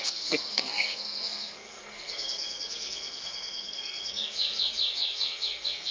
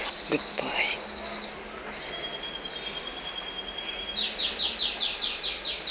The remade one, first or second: first